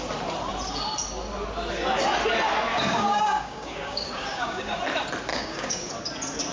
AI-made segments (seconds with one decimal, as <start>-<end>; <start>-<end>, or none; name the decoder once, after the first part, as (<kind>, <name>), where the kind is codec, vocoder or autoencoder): 2.7-4.8 (codec, DAC); 5.3-5.9